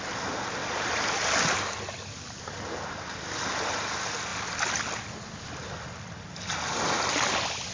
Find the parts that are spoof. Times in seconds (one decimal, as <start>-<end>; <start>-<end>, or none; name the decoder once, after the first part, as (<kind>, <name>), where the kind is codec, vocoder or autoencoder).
none